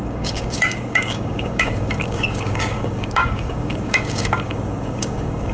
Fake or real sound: fake